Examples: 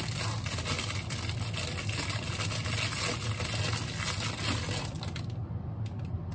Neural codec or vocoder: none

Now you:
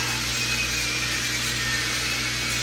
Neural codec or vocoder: none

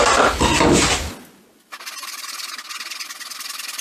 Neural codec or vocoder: none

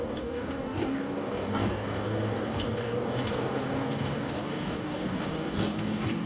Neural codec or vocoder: codec, DAC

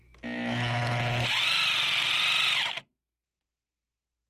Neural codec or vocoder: none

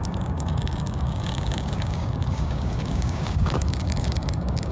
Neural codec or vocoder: codec, DAC